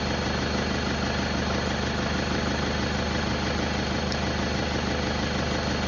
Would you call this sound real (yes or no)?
yes